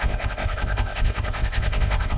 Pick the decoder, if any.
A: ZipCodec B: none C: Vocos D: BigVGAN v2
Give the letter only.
A